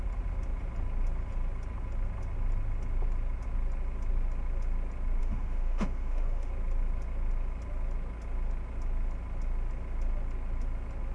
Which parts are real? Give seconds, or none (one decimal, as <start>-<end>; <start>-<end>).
0.0-5.2; 6.5-11.1